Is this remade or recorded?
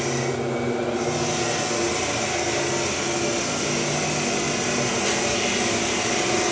recorded